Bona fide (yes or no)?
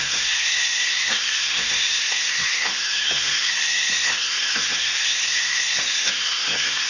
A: no